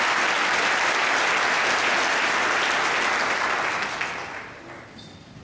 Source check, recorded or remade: recorded